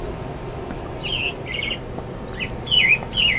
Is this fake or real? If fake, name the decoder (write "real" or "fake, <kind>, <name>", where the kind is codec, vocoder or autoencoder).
real